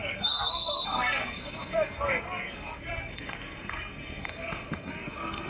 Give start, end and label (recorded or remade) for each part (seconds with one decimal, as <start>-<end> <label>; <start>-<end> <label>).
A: 0.0-5.5 remade